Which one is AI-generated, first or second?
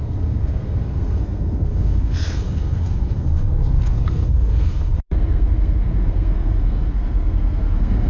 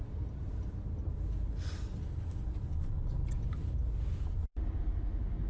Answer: first